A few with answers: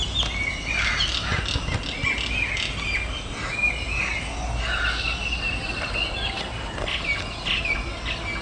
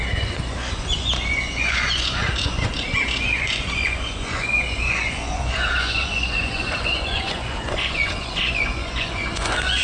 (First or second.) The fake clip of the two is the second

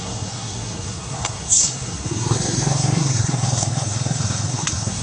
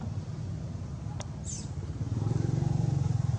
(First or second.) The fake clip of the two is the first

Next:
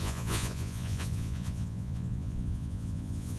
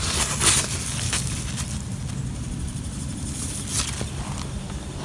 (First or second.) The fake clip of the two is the first